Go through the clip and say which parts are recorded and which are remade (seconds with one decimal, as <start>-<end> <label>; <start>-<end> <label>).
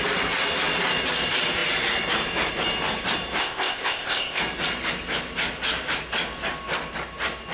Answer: 0.0-3.4 recorded; 3.4-4.4 remade; 4.4-7.5 recorded